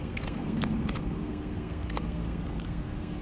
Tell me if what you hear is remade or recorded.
remade